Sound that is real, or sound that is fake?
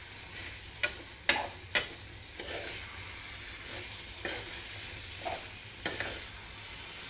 real